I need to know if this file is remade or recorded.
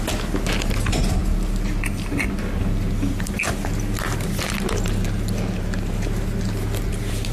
recorded